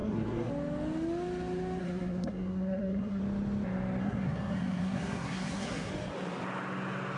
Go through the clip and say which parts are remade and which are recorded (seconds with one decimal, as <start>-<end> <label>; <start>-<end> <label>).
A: 0.0-0.5 remade; 0.5-1.8 recorded; 1.8-3.2 remade; 3.2-4.0 recorded; 4.0-5.9 remade; 5.9-7.2 recorded